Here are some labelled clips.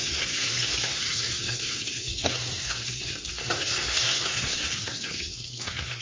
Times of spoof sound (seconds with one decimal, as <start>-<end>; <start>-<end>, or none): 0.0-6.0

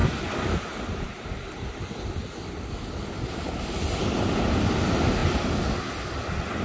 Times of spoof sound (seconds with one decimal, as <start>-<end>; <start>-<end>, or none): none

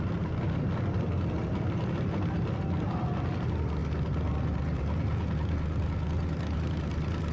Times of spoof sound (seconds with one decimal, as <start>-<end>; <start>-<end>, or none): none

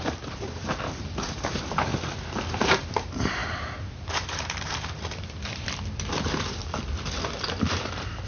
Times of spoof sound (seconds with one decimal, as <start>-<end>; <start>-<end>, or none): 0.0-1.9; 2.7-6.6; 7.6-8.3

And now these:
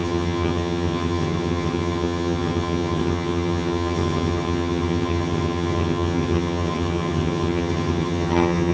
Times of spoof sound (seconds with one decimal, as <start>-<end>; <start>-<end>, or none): 0.0-8.7

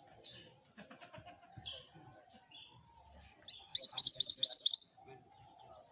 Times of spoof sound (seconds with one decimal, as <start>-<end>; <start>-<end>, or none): 3.7-4.7